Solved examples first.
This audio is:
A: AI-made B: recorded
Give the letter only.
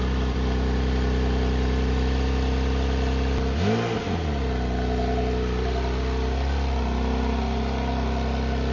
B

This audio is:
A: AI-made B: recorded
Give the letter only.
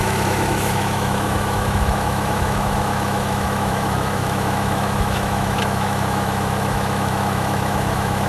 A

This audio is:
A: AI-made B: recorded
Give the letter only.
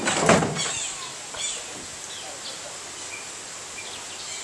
B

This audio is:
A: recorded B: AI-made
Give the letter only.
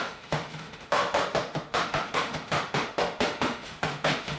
B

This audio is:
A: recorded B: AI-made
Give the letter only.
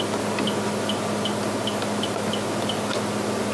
A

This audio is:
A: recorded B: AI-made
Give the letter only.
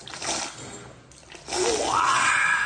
A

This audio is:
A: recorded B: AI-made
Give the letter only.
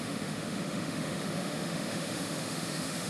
B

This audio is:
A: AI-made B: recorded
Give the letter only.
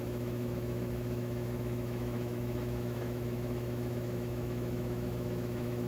A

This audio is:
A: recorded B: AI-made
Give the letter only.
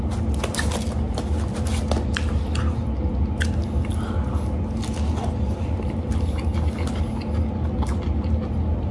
A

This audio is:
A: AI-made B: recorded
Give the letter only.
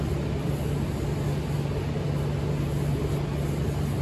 B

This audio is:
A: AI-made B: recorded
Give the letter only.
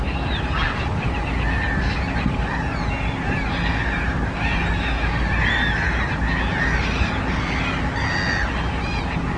B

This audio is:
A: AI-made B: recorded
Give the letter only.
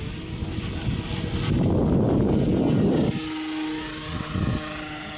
B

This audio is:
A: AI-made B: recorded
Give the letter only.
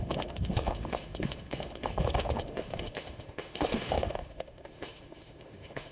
A